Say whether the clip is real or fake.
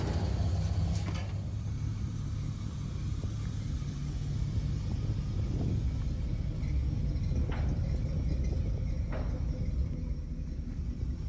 real